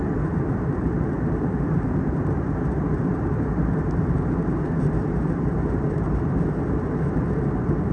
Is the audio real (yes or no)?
no